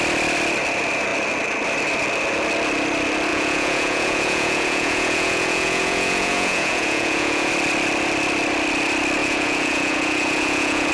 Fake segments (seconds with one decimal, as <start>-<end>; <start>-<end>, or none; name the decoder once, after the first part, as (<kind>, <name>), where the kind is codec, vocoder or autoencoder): 3.3-7.5 (vocoder, Vocos); 9.2-10.9